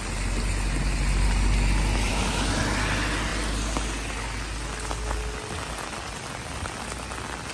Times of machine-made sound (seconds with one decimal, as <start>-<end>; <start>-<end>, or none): 2.1-2.6